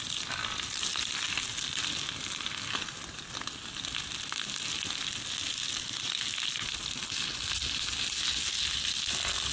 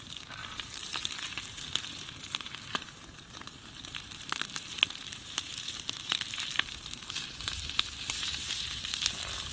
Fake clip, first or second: second